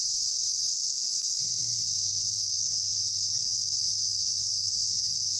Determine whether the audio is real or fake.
fake